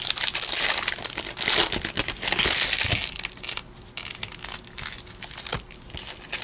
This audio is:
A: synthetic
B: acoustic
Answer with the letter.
B